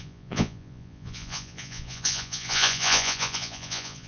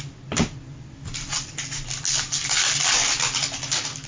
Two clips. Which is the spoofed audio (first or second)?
first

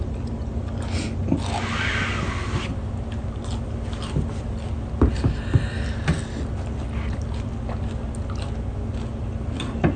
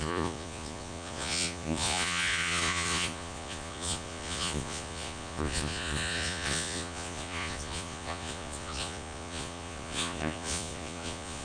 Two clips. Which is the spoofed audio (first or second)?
second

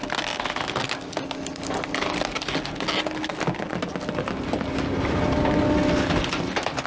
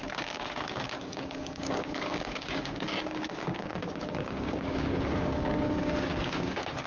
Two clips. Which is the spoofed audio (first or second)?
second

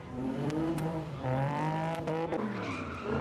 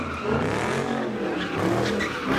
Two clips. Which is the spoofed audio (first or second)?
first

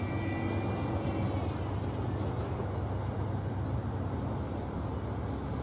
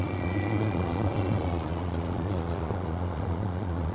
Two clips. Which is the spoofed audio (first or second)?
second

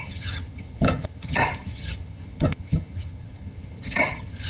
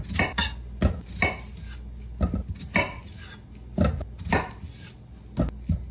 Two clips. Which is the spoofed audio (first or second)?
first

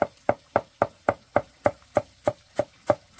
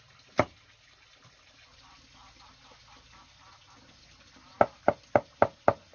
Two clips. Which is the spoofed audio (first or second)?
first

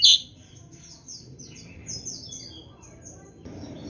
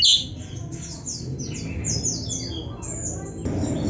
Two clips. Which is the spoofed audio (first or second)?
first